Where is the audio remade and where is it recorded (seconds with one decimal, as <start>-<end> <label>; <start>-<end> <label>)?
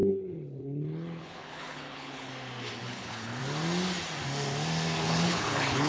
0.0-2.3 remade; 2.3-2.8 recorded; 2.8-3.4 remade; 3.4-5.0 recorded; 5.0-5.9 remade